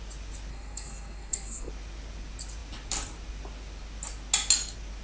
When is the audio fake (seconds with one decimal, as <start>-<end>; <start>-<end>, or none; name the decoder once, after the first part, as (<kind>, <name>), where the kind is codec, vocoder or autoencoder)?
0.5-1.7 (codec, SNAC)